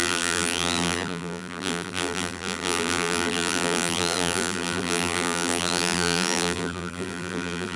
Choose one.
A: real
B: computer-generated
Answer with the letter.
B